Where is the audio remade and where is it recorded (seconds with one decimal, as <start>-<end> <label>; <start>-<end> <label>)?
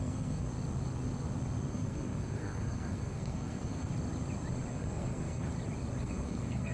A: 0.0-0.5 remade; 0.5-1.7 recorded; 1.7-3.9 remade; 3.9-4.7 recorded; 4.7-5.5 remade; 5.5-6.0 recorded; 6.0-6.7 remade